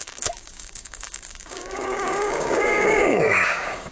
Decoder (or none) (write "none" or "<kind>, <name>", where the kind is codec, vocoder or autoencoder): codec, DAC